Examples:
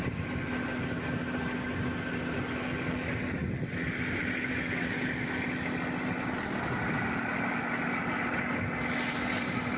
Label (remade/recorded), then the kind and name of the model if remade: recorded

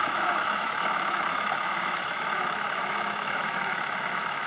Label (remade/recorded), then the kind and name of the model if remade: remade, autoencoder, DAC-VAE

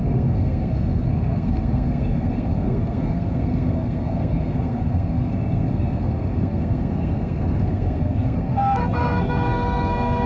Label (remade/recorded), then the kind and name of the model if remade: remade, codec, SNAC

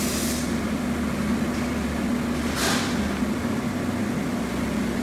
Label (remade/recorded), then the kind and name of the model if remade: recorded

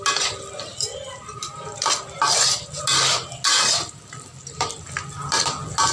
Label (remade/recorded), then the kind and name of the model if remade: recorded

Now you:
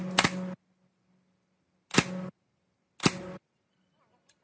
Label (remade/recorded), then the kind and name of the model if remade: recorded